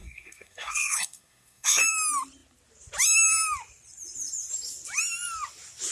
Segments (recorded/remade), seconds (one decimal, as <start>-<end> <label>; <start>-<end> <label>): 0.0-1.8 remade; 1.8-5.9 recorded

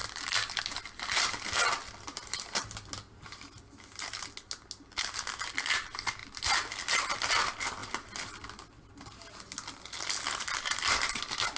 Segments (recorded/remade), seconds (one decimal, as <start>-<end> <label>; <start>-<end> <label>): 0.0-11.6 recorded

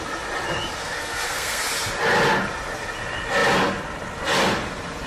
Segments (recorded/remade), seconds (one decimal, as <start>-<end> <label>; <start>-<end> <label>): 0.0-0.8 recorded; 0.8-1.6 remade; 1.6-5.1 recorded

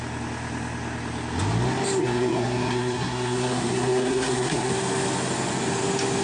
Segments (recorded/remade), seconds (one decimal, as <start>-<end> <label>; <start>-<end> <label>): 0.0-2.0 recorded; 2.0-4.7 remade; 4.7-6.2 recorded

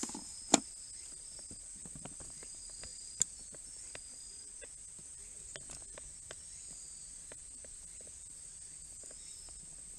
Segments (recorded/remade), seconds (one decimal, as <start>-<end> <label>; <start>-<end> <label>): 0.0-10.0 recorded

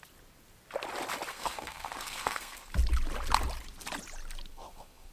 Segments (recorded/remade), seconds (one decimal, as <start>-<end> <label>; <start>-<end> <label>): 0.0-1.3 recorded; 1.3-2.7 remade; 2.7-4.5 recorded; 4.5-5.1 remade

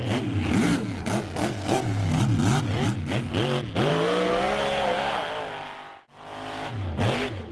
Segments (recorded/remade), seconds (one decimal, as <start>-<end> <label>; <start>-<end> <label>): 0.0-1.4 recorded; 1.4-2.2 remade; 2.2-3.9 recorded; 3.9-5.3 remade; 5.3-7.5 recorded

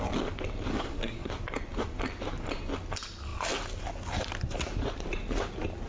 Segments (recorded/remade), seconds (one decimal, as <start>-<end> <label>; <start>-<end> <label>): 0.0-0.7 recorded; 0.7-1.3 remade; 1.3-5.9 recorded